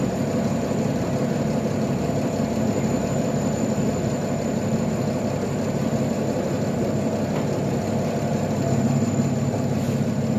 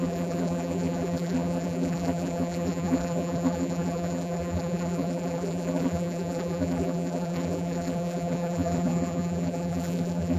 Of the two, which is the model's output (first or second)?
second